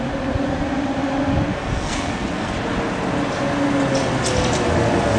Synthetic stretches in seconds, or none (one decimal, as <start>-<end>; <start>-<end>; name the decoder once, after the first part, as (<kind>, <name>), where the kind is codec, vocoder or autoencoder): 1.5-2.5 (codec, SNAC)